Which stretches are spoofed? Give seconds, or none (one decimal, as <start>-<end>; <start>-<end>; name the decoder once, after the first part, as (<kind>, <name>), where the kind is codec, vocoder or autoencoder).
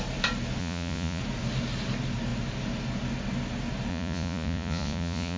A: 0.6-1.2 (vocoder, Vocos); 3.9-5.4